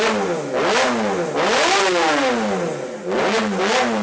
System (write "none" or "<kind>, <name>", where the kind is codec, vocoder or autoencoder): none